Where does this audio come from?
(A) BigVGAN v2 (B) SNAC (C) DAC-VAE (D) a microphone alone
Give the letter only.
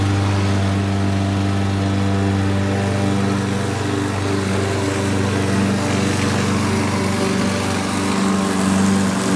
D